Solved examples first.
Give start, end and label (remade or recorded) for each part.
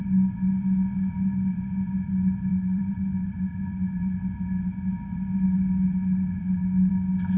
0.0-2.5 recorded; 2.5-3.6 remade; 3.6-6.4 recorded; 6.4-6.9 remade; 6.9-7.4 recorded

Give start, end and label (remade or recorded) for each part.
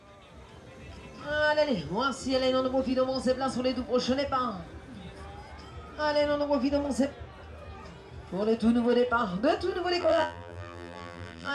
0.0-10.0 recorded; 10.0-11.5 remade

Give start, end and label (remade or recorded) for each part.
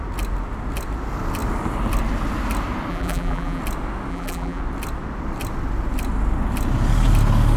0.0-2.9 recorded; 2.9-3.6 remade; 3.6-4.1 recorded; 4.1-4.6 remade; 4.6-7.6 recorded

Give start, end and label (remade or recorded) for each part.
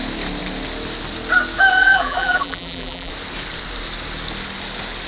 0.0-1.8 recorded; 1.8-3.1 remade; 3.1-5.1 recorded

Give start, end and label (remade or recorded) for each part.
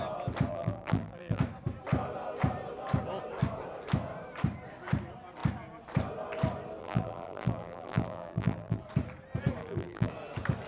0.0-0.5 recorded; 0.5-1.4 remade; 1.4-6.8 recorded; 6.8-8.8 remade; 8.8-9.6 recorded; 9.6-10.1 remade; 10.1-10.7 recorded